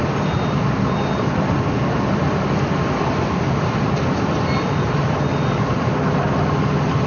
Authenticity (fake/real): real